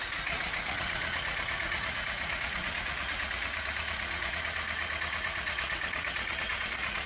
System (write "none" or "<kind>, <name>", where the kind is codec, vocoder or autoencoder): vocoder, Vocos